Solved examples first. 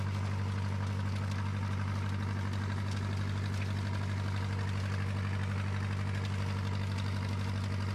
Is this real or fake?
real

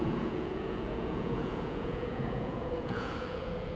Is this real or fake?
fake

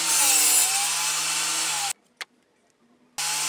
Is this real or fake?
real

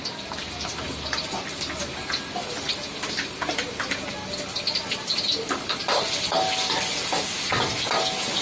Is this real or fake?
real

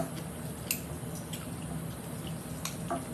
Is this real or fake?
real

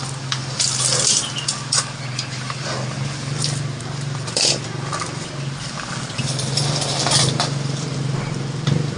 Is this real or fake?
fake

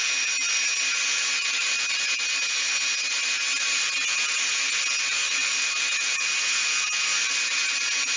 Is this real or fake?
real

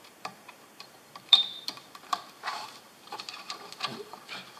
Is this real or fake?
fake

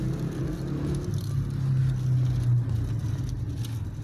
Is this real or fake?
real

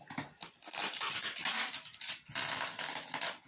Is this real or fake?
real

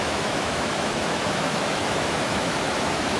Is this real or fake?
fake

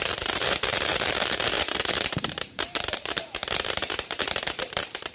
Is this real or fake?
fake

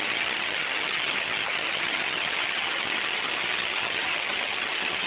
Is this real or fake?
fake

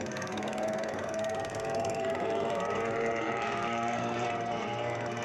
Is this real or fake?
fake